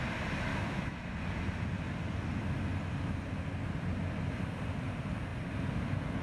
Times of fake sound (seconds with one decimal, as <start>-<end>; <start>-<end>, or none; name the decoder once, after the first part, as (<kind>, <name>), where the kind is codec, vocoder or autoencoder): 0.5-1.1 (autoencoder, DAC-VAE)